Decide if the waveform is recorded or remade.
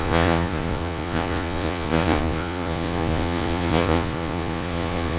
remade